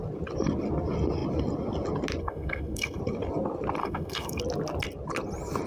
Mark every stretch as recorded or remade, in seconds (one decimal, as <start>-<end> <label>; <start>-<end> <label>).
0.0-2.2 recorded; 2.2-3.0 remade; 3.0-3.8 recorded; 3.8-4.4 remade; 4.4-5.7 recorded